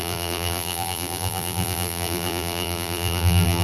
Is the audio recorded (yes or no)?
no